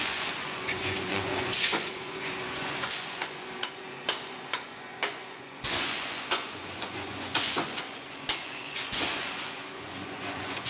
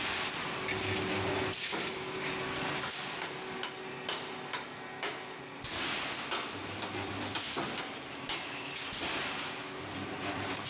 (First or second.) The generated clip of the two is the first